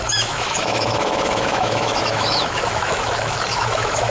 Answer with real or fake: fake